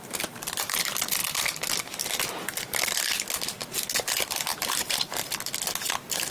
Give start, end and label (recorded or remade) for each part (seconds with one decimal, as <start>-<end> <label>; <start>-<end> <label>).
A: 0.0-1.2 remade; 1.2-4.7 recorded; 4.7-5.2 remade; 5.2-6.3 recorded